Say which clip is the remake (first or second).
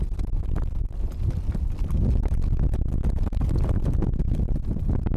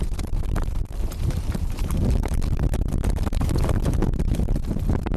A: second